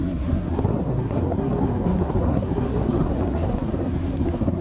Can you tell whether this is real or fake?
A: fake